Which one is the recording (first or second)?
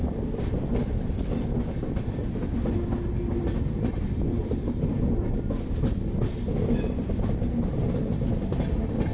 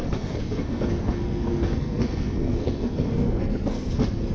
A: first